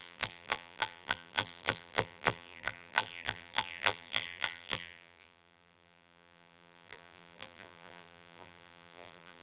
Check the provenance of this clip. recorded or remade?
remade